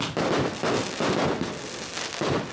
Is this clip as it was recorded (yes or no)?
yes